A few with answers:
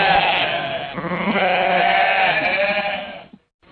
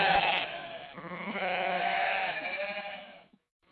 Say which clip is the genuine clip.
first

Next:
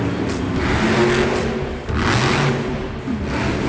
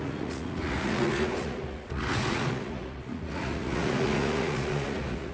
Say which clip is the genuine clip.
first